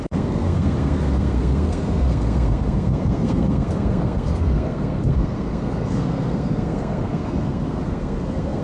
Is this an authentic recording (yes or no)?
no